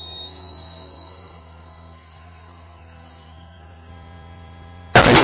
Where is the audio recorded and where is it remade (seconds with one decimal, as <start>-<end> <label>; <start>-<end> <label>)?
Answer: 0.0-3.9 remade; 3.9-5.2 recorded